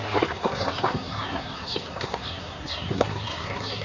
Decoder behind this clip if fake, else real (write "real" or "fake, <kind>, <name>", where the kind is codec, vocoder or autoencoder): fake, codec, SNAC